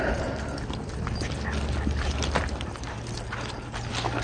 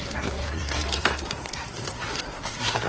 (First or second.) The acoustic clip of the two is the first